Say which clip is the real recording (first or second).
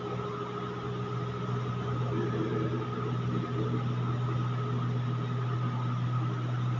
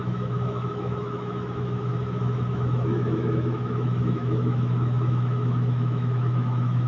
first